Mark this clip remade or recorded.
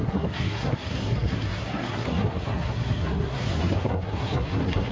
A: remade